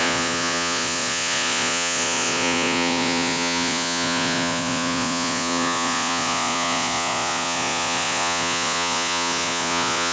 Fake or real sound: fake